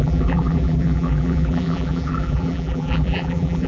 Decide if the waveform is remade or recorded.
remade